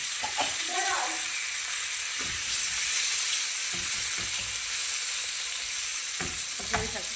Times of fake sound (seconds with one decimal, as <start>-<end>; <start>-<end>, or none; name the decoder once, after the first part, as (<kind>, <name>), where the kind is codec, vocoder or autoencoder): 0.0-0.9 (vocoder, Vocos); 2.1-4.2; 5.9-6.6